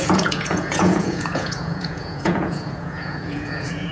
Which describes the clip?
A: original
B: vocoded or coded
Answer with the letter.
B